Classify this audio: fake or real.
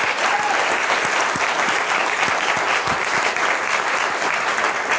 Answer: real